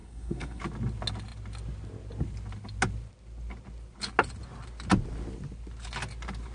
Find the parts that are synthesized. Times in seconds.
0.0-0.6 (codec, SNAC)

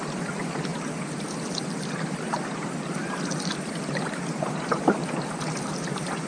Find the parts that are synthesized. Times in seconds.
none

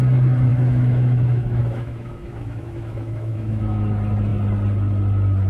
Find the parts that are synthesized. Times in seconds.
0.5-3.8 (autoencoder, DAC-VAE)